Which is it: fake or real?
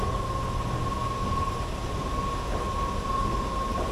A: real